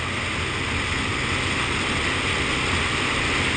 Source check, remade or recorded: recorded